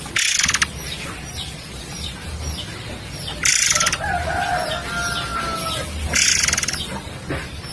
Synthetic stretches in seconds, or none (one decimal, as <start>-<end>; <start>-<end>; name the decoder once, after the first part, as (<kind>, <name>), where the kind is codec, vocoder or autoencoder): 3.5-4.5 (vocoder, BigVGAN v2)